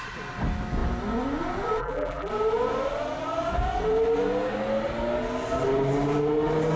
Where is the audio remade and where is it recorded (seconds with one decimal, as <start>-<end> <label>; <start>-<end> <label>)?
0.0-1.8 recorded; 1.8-2.3 remade; 2.3-6.8 recorded